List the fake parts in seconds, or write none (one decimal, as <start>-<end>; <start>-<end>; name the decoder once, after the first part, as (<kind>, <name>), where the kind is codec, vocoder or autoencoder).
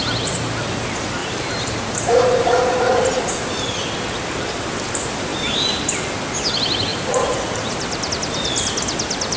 1.2-2.8 (vocoder, BigVGAN v2); 5.3-5.8; 6.9-8.1